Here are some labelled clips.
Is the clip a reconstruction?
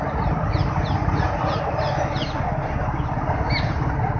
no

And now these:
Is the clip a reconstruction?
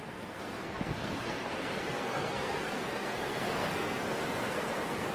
yes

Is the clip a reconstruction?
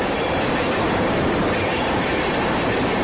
yes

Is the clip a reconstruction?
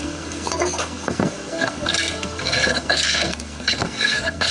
yes